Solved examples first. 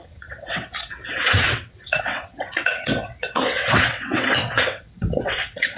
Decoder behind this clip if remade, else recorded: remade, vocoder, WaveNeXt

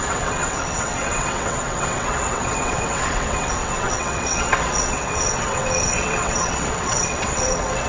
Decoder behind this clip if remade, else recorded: remade, vocoder, WaveNeXt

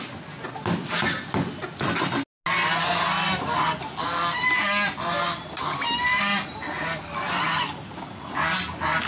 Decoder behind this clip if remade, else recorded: recorded